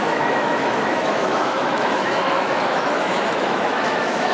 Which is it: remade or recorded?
remade